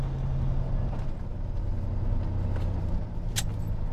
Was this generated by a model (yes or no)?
no